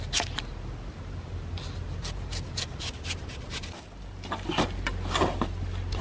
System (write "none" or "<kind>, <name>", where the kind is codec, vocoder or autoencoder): none